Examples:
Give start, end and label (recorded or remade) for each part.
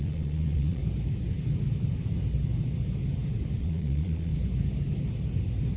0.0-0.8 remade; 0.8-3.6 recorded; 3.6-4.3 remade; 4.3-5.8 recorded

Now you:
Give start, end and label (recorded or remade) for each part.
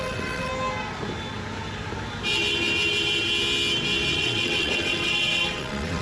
0.0-0.5 remade; 0.5-4.1 recorded; 4.1-6.0 remade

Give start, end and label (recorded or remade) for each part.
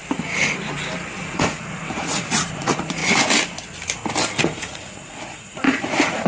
0.0-1.2 recorded; 1.2-3.0 remade; 3.0-4.4 recorded; 4.4-6.3 remade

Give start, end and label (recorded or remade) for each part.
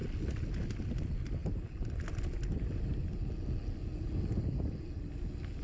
0.0-5.6 recorded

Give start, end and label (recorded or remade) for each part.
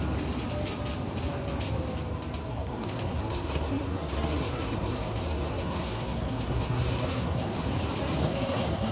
0.0-2.5 recorded; 2.5-7.7 remade; 7.7-8.2 recorded; 8.2-8.9 remade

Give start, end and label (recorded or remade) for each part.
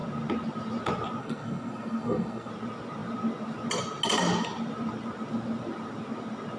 0.0-1.2 recorded; 1.2-2.5 remade; 2.5-6.6 recorded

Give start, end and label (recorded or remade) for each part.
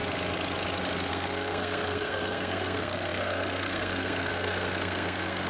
0.0-1.1 recorded; 1.1-5.5 remade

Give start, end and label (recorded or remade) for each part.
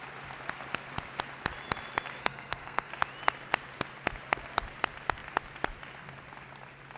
0.0-2.2 recorded; 2.2-2.9 remade; 2.9-7.0 recorded